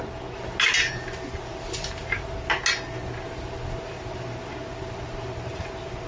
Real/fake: real